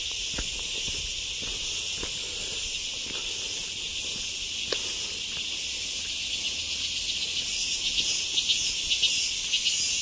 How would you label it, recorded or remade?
recorded